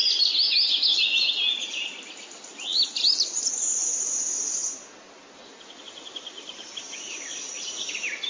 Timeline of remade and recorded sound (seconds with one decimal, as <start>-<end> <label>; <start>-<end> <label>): 0.0-3.0 recorded; 3.0-4.6 remade; 4.6-5.8 recorded; 5.8-8.3 remade